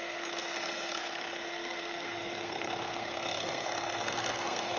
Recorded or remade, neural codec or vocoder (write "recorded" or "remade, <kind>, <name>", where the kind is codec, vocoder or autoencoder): remade, codec, SNAC